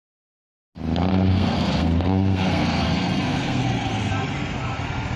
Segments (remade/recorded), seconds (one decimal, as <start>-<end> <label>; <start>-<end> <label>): 0.0-1.1 recorded; 1.1-4.1 remade; 4.1-5.2 recorded